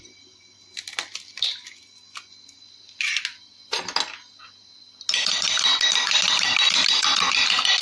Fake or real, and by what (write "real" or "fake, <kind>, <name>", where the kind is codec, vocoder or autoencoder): real